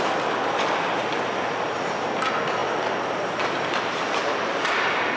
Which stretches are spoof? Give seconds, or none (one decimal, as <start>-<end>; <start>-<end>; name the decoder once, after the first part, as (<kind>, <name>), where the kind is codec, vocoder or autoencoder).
none